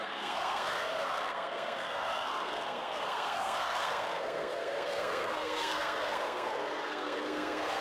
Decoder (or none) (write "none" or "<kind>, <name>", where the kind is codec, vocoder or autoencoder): codec, SNAC